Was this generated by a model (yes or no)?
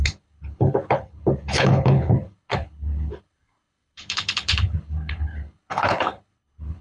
yes